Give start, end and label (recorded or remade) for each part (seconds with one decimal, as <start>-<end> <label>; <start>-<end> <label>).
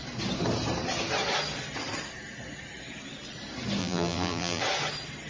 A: 0.0-3.8 recorded; 3.8-4.6 remade; 4.6-5.3 recorded